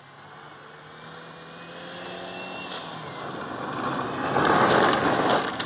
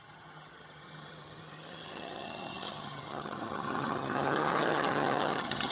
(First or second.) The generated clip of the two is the second